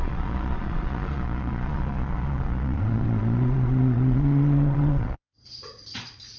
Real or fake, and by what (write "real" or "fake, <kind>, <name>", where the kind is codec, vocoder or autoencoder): fake, vocoder, Vocos